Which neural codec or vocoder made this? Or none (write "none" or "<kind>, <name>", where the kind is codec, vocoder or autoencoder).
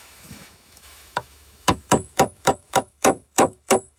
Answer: autoencoder, DAC-VAE